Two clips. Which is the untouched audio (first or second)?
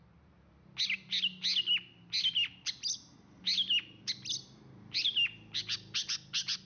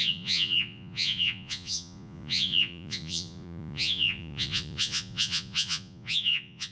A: first